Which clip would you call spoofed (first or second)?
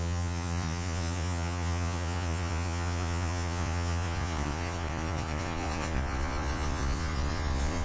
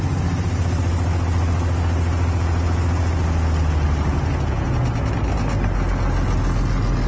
first